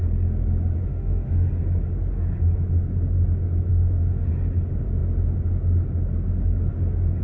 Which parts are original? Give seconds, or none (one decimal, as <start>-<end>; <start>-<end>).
0.0-0.9; 1.5-3.7; 4.3-7.2